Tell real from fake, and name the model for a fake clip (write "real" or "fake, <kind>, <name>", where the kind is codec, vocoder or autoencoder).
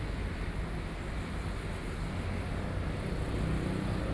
real